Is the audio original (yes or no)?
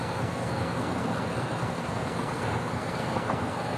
no